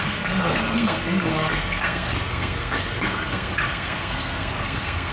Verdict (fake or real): fake